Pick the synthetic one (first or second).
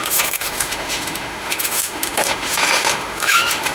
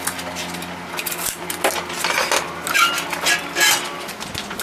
first